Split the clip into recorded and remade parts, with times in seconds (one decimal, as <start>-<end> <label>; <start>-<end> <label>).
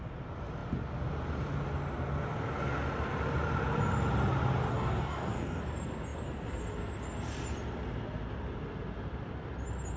0.0-4.7 recorded; 4.7-5.6 remade; 5.6-10.0 recorded